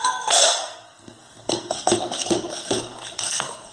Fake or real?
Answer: fake